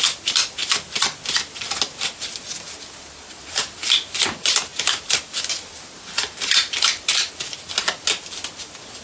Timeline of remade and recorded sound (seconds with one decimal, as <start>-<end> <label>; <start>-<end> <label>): 0.0-9.0 recorded